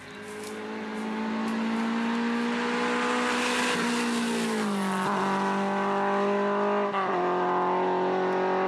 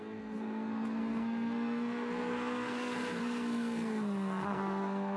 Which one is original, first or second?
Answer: first